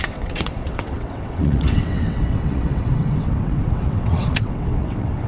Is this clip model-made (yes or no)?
yes